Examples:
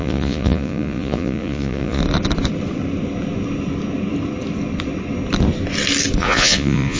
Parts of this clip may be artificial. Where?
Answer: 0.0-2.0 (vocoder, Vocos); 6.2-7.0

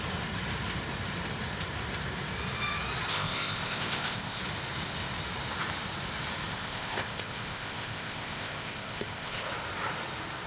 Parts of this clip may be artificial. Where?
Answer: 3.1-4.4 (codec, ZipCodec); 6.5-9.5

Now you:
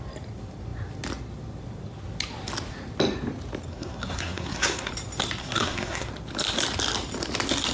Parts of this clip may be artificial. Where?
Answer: 3.7-4.9 (codec, SNAC); 5.4-6.1